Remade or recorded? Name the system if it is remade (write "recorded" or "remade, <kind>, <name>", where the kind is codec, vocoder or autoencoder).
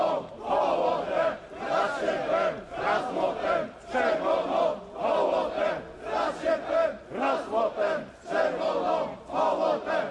recorded